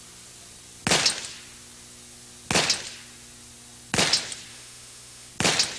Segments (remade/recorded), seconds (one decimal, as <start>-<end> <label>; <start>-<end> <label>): 0.0-4.5 recorded; 4.5-5.3 remade; 5.3-5.8 recorded